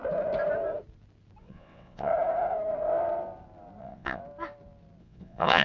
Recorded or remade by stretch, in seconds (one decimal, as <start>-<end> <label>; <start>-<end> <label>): 0.0-1.4 recorded; 1.4-2.1 remade; 2.1-3.8 recorded; 3.8-4.2 remade; 4.2-5.0 recorded; 5.0-5.6 remade